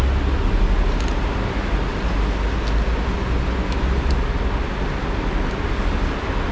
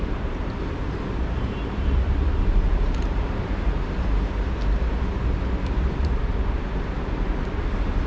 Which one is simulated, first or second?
second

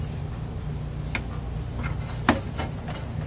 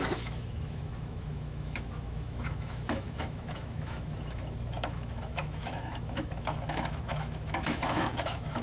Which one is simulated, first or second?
second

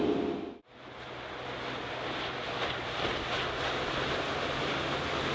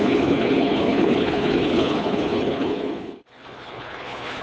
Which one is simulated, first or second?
second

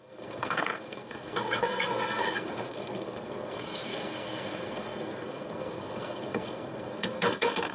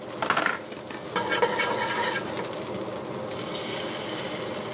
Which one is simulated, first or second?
first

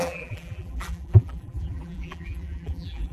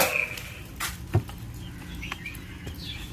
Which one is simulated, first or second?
first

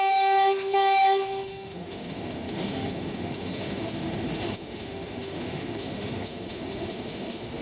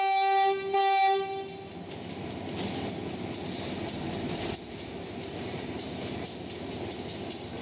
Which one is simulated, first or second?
first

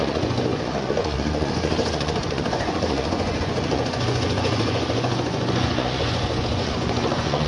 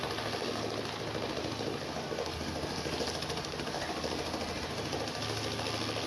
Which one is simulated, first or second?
first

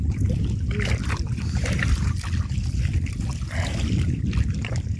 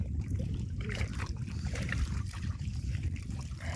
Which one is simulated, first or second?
second